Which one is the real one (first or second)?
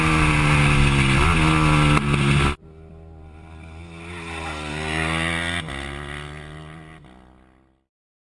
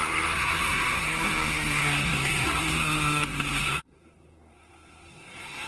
first